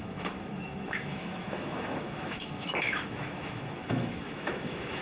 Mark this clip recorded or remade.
remade